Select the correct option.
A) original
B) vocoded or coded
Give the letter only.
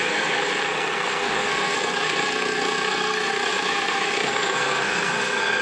B